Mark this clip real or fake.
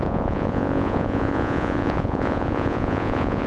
fake